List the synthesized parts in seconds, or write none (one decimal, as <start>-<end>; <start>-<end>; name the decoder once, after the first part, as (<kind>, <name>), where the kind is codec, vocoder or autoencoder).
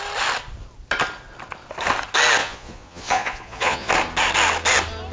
2.4-3.9 (vocoder, Vocos)